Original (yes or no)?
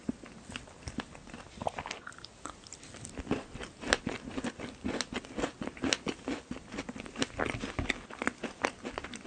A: yes